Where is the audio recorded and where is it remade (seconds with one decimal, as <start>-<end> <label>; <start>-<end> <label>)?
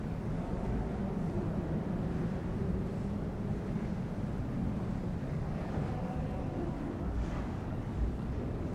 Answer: 0.0-1.0 remade; 1.0-5.2 recorded; 5.2-8.7 remade